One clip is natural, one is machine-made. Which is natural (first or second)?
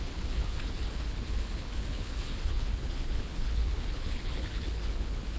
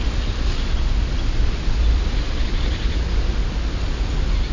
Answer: second